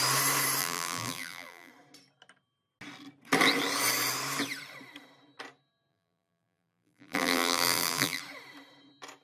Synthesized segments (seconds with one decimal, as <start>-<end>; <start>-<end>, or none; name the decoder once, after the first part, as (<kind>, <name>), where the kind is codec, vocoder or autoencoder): 0.6-1.7 (vocoder, BigVGAN v2); 5.9-8.2